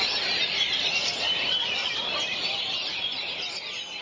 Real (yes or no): no